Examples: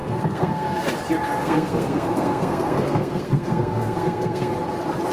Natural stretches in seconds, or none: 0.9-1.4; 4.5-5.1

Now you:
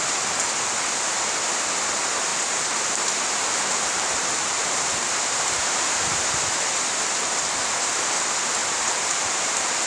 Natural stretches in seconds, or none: 0.0-2.3; 6.7-8.6; 9.5-9.9